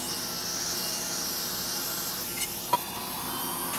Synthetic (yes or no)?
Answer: no